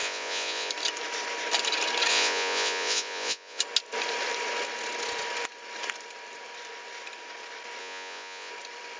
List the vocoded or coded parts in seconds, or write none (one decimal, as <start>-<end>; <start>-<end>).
0.0-0.7; 2.1-3.6; 7.8-8.5

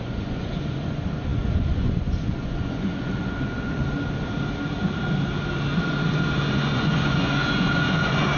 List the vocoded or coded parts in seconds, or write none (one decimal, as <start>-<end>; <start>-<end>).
0.0-3.8; 6.5-8.4